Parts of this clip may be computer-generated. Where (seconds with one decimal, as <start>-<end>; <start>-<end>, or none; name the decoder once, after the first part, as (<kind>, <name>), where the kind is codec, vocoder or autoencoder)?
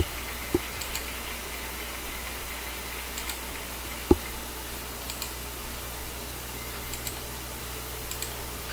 6.0-7.6 (vocoder, BigVGAN v2)